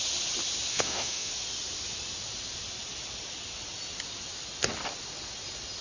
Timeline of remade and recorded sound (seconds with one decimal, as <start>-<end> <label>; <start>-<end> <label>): 0.0-0.7 recorded; 0.7-1.3 remade; 1.3-5.8 recorded